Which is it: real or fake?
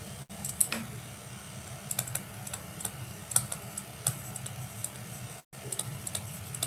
real